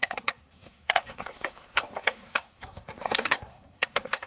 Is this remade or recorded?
remade